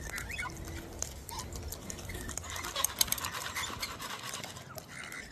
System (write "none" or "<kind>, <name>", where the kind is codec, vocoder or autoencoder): none